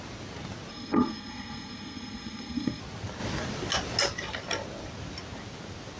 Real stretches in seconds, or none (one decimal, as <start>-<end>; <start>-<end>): 0.0-0.7; 2.8-6.0